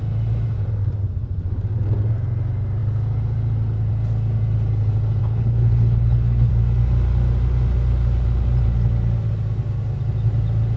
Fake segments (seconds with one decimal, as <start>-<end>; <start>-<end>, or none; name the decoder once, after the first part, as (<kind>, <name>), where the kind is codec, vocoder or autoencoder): 5.2-6.5 (codec, HILCodec)